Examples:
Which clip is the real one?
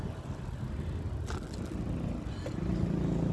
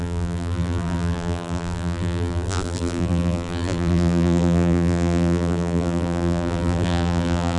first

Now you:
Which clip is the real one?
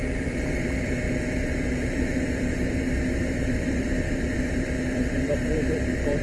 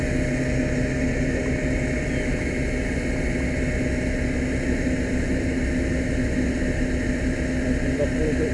second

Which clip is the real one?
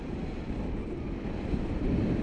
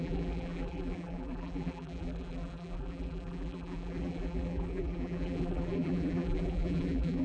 first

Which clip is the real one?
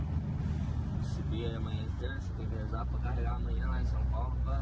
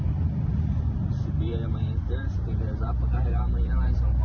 first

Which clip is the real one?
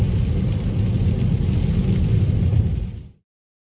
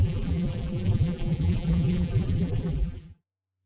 first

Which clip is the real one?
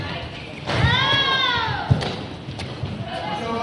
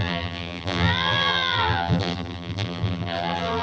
first